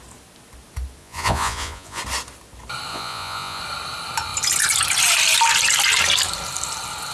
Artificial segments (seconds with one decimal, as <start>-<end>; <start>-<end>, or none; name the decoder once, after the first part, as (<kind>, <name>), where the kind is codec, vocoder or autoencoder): 1.0-2.0 (vocoder, Vocos); 2.9-3.6